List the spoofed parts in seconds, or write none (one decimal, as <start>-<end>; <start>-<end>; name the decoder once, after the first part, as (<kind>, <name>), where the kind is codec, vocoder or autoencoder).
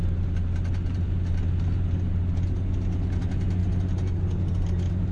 none